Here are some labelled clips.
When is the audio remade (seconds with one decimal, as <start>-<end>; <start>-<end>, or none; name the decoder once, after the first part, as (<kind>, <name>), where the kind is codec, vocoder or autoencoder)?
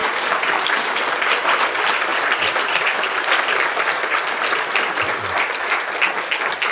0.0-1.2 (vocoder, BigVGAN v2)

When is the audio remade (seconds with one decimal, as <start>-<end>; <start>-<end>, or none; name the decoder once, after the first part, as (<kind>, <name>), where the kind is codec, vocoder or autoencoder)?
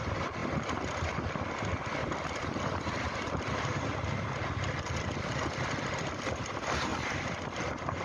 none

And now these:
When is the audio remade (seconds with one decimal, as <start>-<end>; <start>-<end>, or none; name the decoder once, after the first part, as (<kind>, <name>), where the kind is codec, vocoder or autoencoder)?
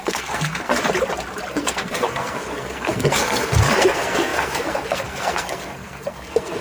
0.0-0.7 (codec, SNAC); 1.5-6.6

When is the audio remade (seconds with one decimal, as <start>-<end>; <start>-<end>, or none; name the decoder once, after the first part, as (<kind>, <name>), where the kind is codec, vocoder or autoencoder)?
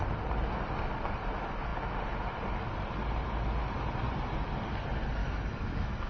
5.2-6.1 (autoencoder, DAC-VAE)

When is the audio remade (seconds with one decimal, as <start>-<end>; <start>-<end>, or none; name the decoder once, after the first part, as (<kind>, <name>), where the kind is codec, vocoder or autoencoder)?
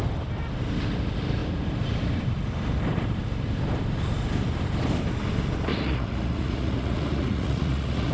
5.7-8.1 (vocoder, Vocos)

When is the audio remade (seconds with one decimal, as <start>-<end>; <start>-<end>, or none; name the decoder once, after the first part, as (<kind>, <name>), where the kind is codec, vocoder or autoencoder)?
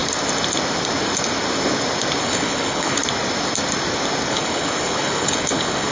2.2-3.0 (codec, HILCodec); 4.3-5.9